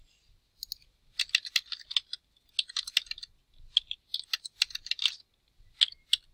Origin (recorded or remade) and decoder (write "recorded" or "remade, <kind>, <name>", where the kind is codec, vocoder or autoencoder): recorded